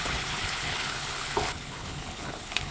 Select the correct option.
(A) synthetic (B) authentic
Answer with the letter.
A